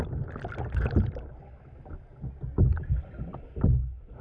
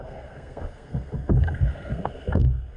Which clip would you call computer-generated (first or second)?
second